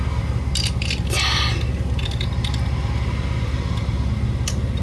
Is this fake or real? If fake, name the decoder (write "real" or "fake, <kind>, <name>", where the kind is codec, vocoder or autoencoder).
real